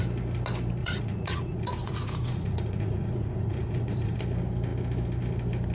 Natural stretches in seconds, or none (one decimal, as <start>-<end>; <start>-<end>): 0.0-0.8; 4.2-5.7